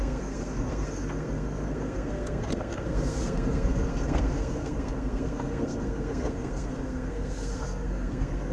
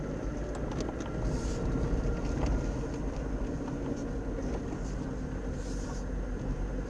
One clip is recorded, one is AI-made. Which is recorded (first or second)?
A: second